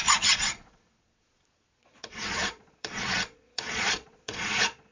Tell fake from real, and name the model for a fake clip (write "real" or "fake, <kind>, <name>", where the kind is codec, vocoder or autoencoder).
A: fake, vocoder, Vocos